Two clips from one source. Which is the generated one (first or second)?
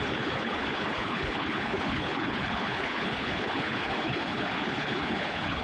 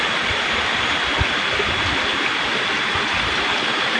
first